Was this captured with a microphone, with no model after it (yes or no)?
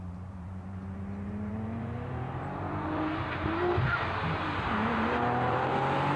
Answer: no